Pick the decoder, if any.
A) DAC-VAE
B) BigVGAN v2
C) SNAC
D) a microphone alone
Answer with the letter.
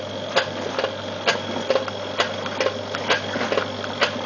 D